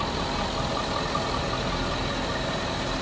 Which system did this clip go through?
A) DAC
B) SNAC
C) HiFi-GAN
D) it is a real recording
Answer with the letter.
D